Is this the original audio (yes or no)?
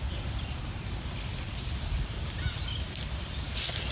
yes